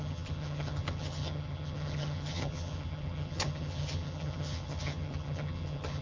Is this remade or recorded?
remade